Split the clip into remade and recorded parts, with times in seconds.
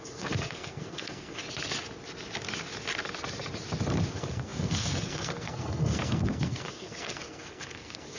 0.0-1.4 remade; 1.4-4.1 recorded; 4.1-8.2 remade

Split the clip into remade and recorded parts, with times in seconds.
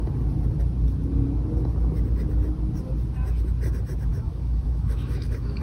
0.0-4.1 recorded; 4.1-5.6 remade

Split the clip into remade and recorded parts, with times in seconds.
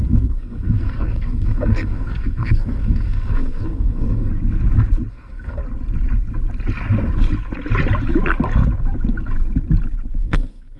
0.0-4.3 remade; 4.3-5.1 recorded; 5.1-5.6 remade; 5.6-10.2 recorded; 10.2-10.8 remade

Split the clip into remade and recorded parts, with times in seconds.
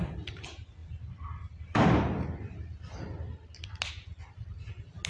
0.0-5.1 recorded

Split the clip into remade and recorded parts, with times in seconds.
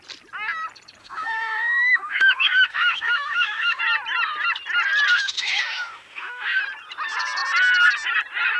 0.0-1.0 recorded; 1.0-3.8 remade; 3.8-5.1 recorded; 5.1-6.6 remade; 6.6-8.6 recorded